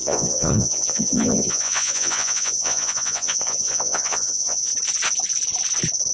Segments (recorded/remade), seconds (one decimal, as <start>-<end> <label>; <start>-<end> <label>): 0.0-4.7 remade; 4.7-6.1 recorded